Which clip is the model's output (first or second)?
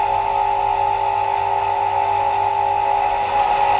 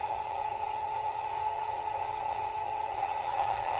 second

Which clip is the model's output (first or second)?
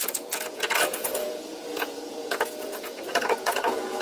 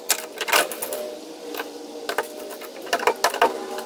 first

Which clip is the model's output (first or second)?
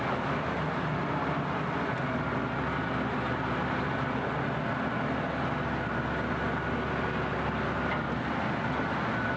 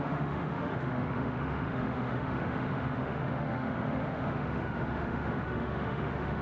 second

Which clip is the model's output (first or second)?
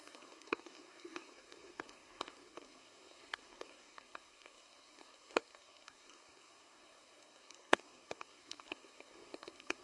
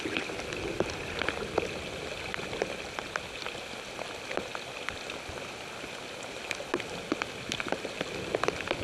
first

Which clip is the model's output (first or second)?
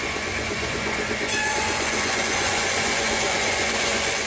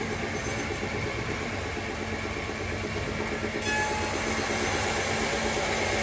first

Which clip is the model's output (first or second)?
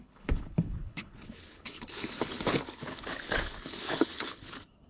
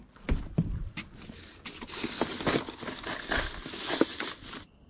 first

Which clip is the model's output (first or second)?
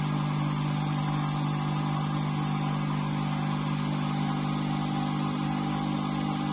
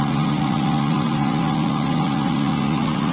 second